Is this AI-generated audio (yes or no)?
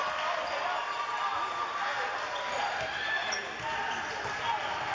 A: no